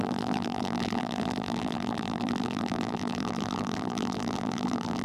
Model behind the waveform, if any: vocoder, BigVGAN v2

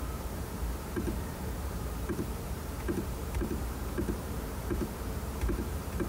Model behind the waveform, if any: vocoder, BigVGAN v2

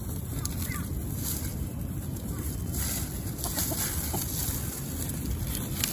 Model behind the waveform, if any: none